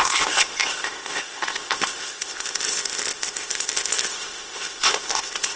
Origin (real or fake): fake